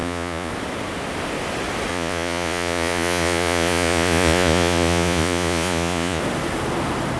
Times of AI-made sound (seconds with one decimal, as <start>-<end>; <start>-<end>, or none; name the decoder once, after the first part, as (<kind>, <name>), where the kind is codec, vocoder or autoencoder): 0.0-0.5 (vocoder, Vocos); 1.9-6.2